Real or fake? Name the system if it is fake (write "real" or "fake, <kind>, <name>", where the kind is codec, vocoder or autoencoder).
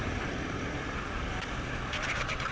fake, vocoder, BigVGAN v2